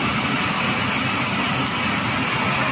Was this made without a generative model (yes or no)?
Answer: yes